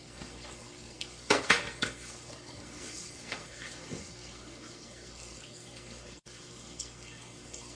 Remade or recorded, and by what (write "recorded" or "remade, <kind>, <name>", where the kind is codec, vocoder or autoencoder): remade, codec, SNAC